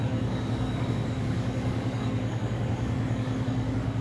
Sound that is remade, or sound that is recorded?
remade